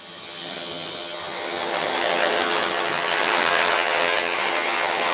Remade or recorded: remade